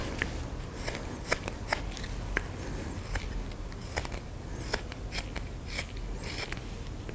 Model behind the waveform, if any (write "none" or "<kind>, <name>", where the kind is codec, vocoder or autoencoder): none